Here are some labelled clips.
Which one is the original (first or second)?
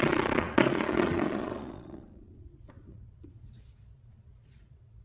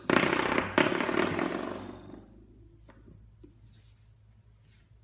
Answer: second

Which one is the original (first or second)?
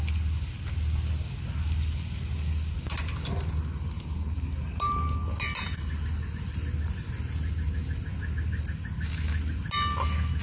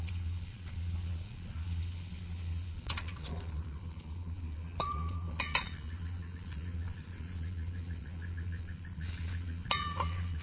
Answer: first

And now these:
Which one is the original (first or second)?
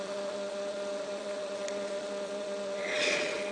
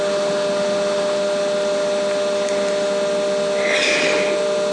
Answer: second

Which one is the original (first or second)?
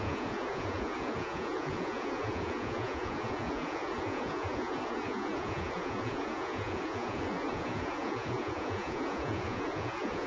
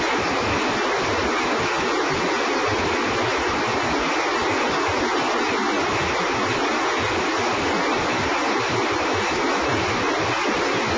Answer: second